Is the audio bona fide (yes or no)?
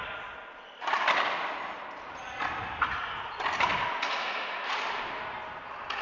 yes